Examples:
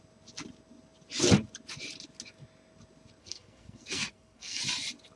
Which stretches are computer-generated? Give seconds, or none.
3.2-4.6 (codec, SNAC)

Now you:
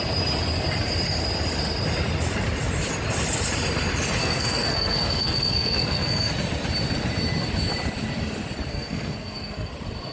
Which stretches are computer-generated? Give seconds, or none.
4.2-6.3 (codec, SNAC); 8.7-9.7

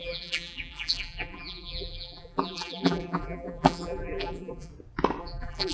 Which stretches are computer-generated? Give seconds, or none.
0.0-4.7 (vocoder, BigVGAN v2); 5.2-5.7

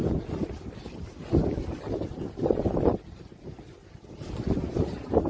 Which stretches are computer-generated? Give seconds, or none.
none

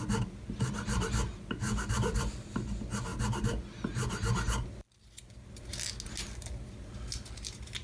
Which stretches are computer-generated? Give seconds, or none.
none

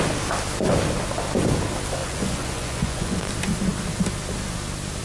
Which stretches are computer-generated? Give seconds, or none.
2.0-3.2 (vocoder, Vocos)